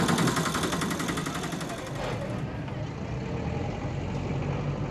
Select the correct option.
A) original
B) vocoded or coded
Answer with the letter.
A